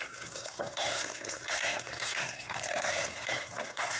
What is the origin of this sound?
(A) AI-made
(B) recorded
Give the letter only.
A